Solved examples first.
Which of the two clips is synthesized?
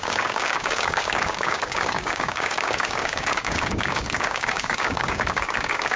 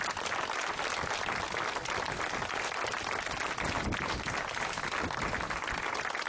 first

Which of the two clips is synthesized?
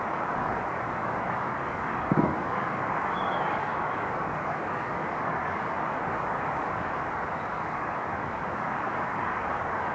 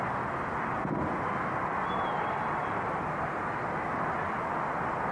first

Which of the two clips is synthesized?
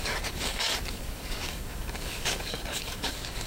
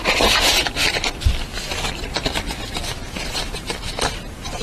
first